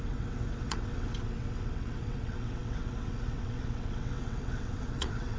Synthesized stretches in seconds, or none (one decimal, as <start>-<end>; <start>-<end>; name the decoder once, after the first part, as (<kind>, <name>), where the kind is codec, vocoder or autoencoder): 0.0-5.4 (vocoder, WaveNeXt)